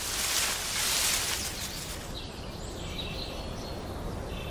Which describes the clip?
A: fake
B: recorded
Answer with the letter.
B